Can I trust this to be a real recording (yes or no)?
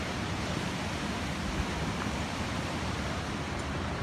yes